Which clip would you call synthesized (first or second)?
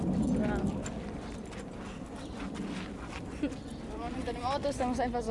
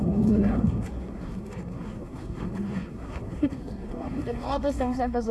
second